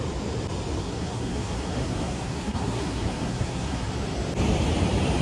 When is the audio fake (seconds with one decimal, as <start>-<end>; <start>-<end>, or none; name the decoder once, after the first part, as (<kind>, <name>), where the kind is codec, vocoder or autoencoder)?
0.8-3.9 (codec, SNAC)